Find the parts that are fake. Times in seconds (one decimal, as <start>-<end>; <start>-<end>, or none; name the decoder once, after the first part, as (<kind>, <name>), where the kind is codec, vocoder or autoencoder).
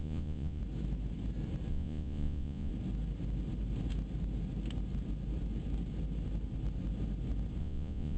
0.0-0.6 (vocoder, Vocos); 1.7-2.7; 7.6-8.2